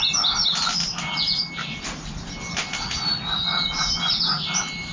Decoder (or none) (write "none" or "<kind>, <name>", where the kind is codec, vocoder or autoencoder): none